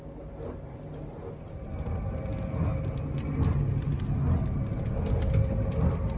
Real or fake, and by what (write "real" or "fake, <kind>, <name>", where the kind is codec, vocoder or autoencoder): real